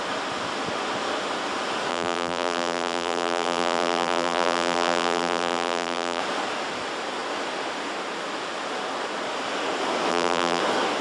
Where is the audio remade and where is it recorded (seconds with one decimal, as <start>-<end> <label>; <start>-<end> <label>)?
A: 0.0-1.9 recorded; 1.9-6.2 remade; 6.2-10.1 recorded; 10.1-10.6 remade; 10.6-11.0 recorded